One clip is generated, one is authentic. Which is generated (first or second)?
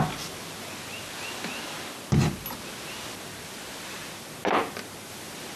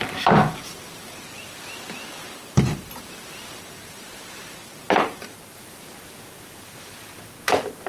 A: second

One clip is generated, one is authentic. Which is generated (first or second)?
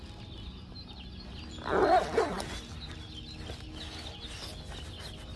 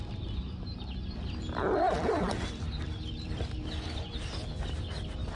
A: second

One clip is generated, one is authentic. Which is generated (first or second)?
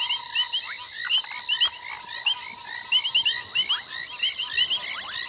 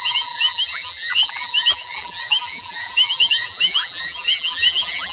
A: second